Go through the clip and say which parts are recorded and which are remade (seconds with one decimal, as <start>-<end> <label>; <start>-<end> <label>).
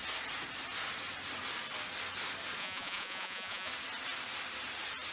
0.0-2.6 recorded; 2.6-3.7 remade; 3.7-5.1 recorded